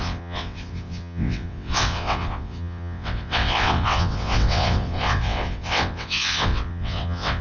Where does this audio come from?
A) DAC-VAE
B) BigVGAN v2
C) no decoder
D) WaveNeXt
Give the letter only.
D